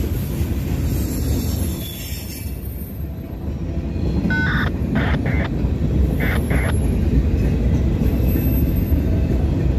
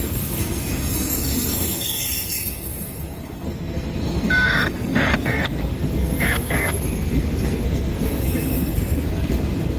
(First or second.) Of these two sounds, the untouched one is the first